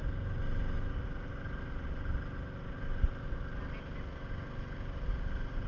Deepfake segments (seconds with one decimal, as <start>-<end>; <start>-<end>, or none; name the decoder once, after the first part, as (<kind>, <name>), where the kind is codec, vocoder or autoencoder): none